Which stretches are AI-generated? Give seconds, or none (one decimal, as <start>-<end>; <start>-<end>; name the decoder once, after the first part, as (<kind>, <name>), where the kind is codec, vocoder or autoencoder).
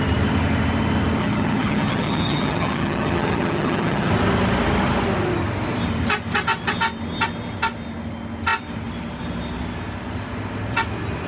1.2-4.1 (vocoder, HiFi-GAN)